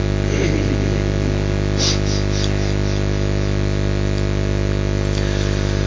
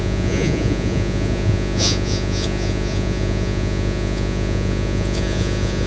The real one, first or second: first